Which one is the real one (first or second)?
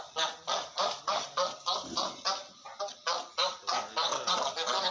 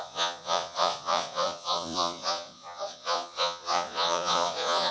first